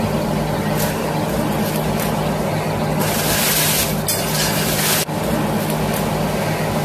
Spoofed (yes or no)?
no